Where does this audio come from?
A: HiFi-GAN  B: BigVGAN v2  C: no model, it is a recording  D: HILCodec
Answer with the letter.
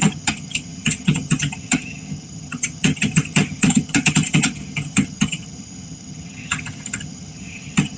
A